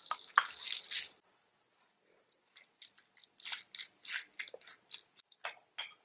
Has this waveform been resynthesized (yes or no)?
no